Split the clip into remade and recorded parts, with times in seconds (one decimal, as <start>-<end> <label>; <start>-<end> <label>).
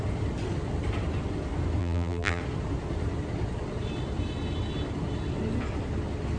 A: 0.0-1.8 recorded; 1.8-2.4 remade; 2.4-6.4 recorded